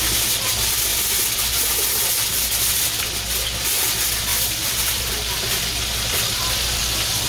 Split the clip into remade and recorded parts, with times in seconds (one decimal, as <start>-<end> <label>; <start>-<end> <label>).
0.0-4.3 recorded; 4.3-5.1 remade; 5.1-6.8 recorded; 6.8-7.3 remade